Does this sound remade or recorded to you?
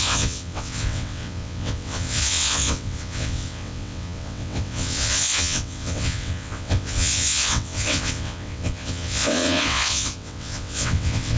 remade